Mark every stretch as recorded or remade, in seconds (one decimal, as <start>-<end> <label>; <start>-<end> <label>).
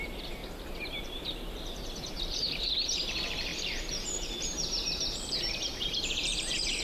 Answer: 0.0-0.4 remade; 0.4-1.0 recorded; 1.0-6.8 remade